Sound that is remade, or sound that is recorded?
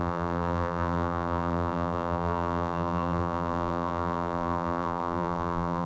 remade